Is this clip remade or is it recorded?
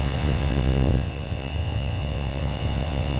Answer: remade